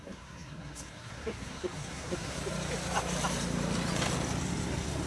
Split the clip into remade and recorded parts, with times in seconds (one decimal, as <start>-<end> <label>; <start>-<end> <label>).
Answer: 0.0-2.4 remade; 2.4-5.1 recorded

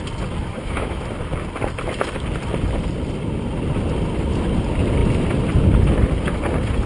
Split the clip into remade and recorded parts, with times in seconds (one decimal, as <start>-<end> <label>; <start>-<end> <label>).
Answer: 0.0-0.5 recorded; 0.5-1.0 remade; 1.0-6.9 recorded

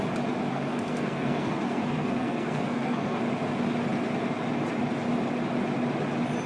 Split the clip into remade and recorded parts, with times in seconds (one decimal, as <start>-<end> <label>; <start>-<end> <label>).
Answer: 0.0-0.5 recorded; 0.5-3.2 remade; 3.2-6.5 recorded

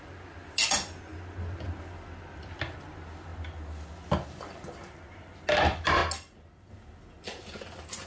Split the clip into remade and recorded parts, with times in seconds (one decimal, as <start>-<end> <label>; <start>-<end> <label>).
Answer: 0.0-8.1 recorded

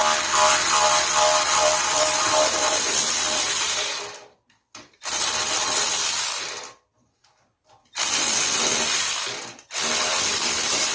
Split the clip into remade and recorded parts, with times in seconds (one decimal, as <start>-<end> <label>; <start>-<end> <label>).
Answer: 0.0-0.5 recorded; 0.5-10.9 remade